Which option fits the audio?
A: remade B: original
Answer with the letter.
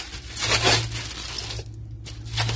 B